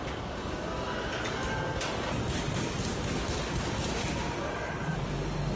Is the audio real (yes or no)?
yes